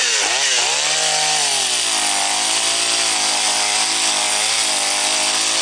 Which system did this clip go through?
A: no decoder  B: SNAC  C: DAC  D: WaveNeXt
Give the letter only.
A